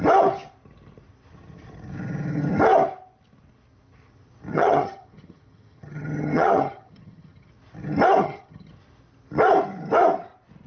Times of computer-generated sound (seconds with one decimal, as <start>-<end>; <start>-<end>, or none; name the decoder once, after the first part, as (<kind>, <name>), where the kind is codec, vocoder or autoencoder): 4.5-7.5 (vocoder, HiFi-GAN); 8.2-8.7